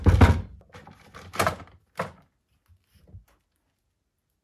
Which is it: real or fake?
real